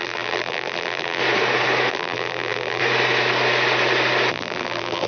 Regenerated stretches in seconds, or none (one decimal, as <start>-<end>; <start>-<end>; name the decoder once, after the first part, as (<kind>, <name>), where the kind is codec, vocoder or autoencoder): 0.0-1.2 (vocoder, BigVGAN v2); 1.9-2.8; 4.3-5.1